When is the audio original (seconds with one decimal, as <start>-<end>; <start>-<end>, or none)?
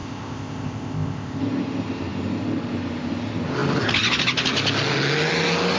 1.4-5.8